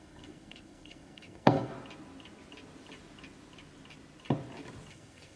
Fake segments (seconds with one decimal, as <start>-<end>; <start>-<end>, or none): 0.0-1.7; 4.9-5.4